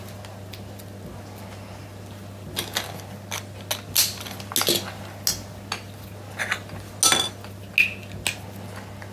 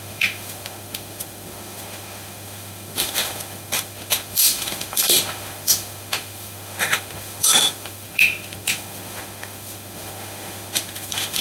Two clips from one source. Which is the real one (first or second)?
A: first